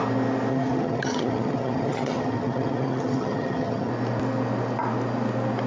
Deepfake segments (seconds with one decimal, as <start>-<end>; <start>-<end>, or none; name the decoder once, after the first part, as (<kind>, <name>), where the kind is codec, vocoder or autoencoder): 0.5-3.9 (vocoder, HiFi-GAN)